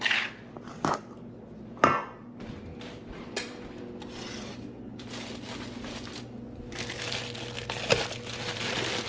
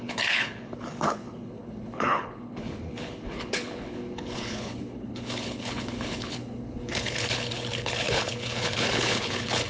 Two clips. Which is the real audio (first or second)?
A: first